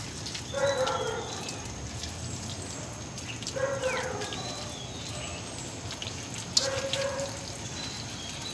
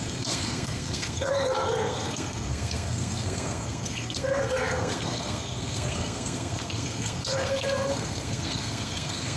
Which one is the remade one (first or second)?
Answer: second